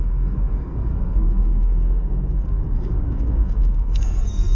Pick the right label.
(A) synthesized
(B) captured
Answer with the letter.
A